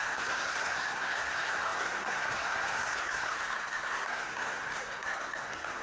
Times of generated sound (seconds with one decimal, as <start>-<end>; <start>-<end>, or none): 0.0-5.8